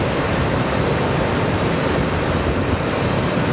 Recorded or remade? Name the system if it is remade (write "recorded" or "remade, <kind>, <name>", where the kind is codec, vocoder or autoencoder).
remade, vocoder, BigVGAN v2